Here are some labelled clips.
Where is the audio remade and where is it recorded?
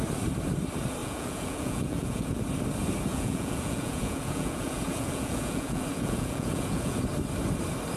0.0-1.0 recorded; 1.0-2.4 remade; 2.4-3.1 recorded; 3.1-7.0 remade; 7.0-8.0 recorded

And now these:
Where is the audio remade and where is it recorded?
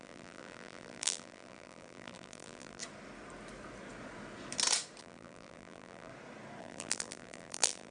0.0-2.8 remade; 2.8-5.0 recorded; 5.0-6.1 remade; 6.1-6.6 recorded; 6.6-7.9 remade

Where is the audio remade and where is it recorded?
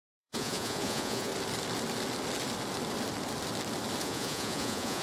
0.0-1.3 remade; 1.3-4.0 recorded; 4.0-5.0 remade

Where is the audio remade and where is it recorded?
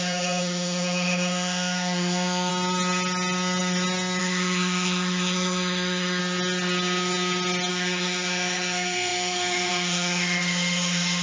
0.0-2.5 remade; 2.5-4.2 recorded; 4.2-6.2 remade; 6.2-7.7 recorded; 7.7-11.2 remade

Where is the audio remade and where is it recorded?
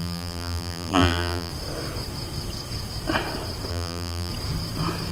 0.0-1.5 remade; 1.5-3.7 recorded; 3.7-4.3 remade; 4.3-5.1 recorded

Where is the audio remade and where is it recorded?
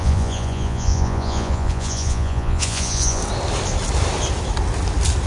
0.0-3.2 remade; 3.2-5.3 recorded